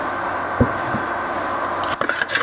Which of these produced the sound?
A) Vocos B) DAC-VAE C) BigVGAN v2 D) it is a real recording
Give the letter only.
D